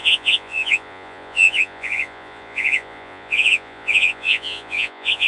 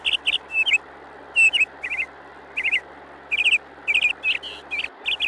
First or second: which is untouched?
second